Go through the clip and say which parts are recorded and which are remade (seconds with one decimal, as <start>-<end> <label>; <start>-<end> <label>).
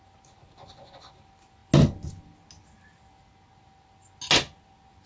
0.0-5.1 recorded